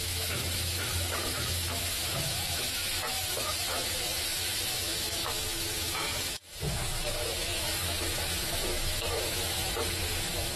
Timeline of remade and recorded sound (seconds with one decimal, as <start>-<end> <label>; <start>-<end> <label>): 0.0-10.6 remade